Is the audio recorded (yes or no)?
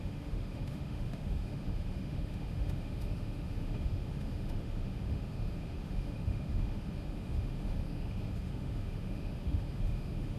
no